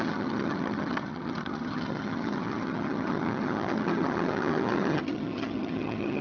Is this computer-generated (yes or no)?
yes